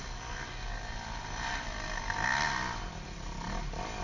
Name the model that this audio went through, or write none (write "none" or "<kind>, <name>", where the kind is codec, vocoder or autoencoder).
none